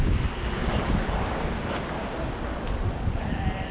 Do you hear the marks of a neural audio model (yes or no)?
no